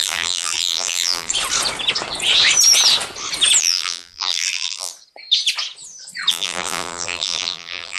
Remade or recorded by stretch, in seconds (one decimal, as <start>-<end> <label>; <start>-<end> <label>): 0.0-1.3 remade; 1.3-3.6 recorded; 3.6-4.9 remade; 4.9-6.3 recorded; 6.3-8.0 remade